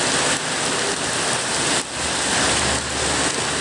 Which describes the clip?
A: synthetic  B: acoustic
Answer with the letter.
B